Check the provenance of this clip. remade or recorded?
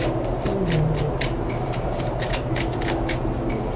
remade